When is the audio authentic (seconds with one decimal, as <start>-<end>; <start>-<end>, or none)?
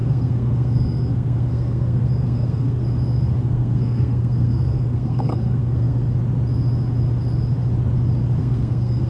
2.8-3.4; 6.1-8.4